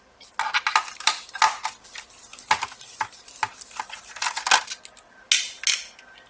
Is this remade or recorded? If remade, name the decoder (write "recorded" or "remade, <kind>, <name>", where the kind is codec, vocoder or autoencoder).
recorded